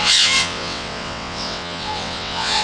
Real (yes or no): no